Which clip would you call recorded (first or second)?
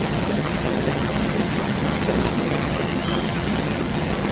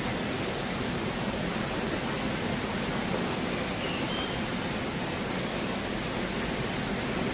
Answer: second